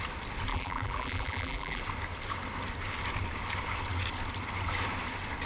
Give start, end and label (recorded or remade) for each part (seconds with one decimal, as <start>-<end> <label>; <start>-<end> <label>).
0.0-0.5 recorded; 0.5-1.8 remade; 1.8-5.5 recorded